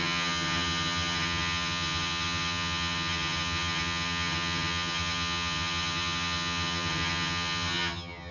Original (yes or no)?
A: no